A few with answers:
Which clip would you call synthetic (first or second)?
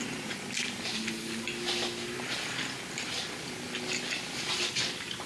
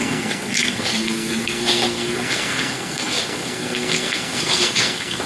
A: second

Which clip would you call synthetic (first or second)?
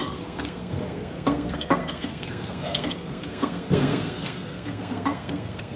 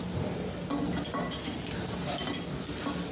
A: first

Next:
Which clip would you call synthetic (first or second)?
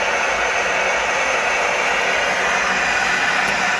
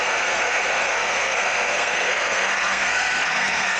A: second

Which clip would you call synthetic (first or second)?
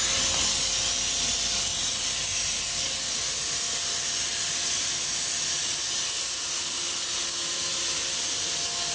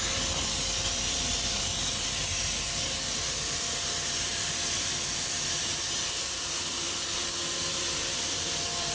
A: second